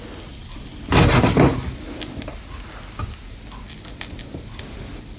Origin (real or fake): real